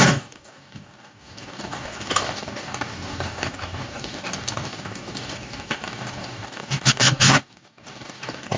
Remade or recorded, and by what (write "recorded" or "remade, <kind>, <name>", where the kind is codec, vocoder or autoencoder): remade, codec, DAC